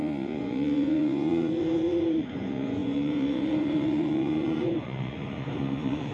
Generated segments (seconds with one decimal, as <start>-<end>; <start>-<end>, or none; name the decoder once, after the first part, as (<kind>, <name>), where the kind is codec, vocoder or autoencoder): 0.0-6.1 (vocoder, Vocos)

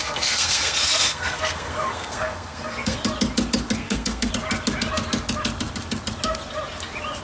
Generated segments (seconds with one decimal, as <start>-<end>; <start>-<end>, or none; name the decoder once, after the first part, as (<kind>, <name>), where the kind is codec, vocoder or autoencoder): 0.0-3.0 (codec, SNAC); 3.8-4.3

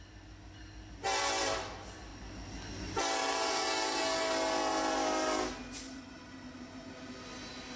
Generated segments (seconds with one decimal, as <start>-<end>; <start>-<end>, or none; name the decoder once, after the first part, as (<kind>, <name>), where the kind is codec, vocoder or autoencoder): 3.2-4.0 (vocoder, BigVGAN v2)

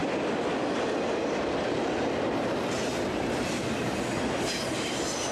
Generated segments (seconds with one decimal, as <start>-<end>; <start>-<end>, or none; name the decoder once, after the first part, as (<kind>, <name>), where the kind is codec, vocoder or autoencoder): none